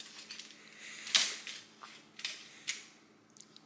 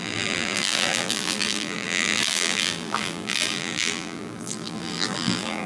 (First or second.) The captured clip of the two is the first